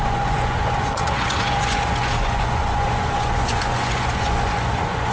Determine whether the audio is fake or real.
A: fake